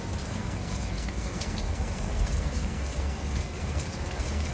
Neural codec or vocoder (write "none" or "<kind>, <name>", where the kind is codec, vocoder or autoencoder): codec, SNAC